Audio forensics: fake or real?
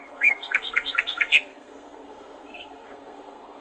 fake